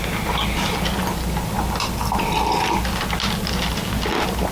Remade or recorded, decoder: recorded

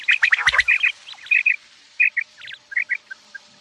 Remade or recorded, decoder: recorded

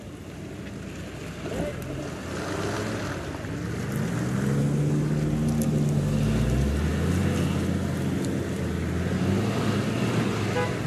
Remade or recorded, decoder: recorded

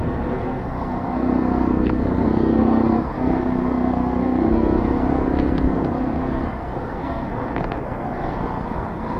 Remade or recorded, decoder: remade, codec, SNAC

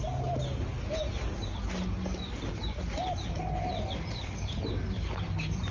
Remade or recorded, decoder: recorded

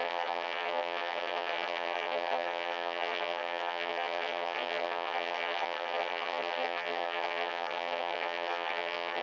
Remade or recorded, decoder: remade, vocoder, HiFi-GAN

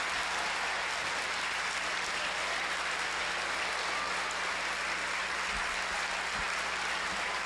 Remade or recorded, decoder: recorded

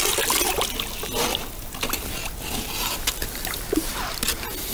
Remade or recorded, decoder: recorded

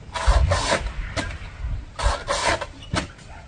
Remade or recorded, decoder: recorded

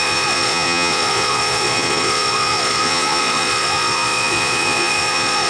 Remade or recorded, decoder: remade, vocoder, Vocos